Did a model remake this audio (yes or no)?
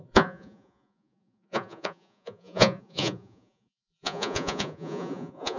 yes